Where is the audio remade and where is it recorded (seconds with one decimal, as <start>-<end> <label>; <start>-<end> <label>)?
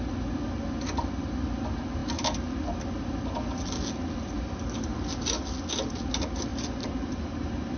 0.0-7.8 recorded